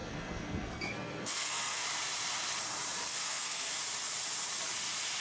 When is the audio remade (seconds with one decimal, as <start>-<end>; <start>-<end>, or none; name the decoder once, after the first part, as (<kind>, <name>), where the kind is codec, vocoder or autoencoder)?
0.0-1.8 (codec, SNAC); 3.0-3.7